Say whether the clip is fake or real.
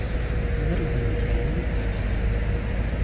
real